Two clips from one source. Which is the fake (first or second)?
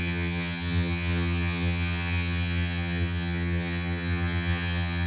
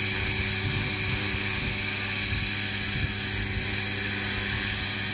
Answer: first